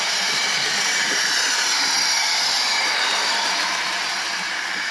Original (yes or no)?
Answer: no